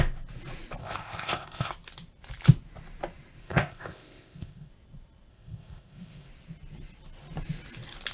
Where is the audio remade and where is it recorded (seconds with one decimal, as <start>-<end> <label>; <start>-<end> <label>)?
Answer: 0.0-0.8 recorded; 0.8-1.7 remade; 1.7-3.4 recorded; 3.4-4.7 remade; 4.7-5.3 recorded; 5.3-6.3 remade; 6.3-8.1 recorded

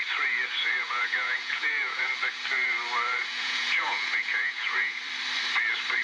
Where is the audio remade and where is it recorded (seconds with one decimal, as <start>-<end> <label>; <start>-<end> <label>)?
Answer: 0.0-0.6 recorded; 0.6-2.1 remade; 2.1-3.2 recorded; 3.2-5.0 remade; 5.0-6.0 recorded

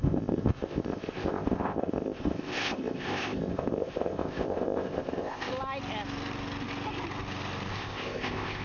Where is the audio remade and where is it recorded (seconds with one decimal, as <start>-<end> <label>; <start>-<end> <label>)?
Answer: 0.0-5.5 remade; 5.5-7.7 recorded; 7.7-8.6 remade

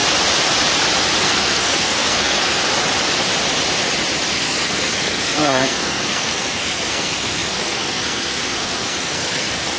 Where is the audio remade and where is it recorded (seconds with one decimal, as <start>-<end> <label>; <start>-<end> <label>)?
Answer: 0.0-1.2 recorded; 1.2-2.6 remade; 2.6-4.3 recorded; 4.3-9.8 remade

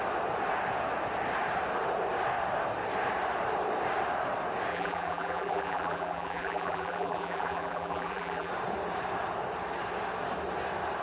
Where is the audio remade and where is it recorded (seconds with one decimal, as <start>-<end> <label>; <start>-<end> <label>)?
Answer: 0.0-4.7 recorded; 4.7-8.5 remade; 8.5-11.0 recorded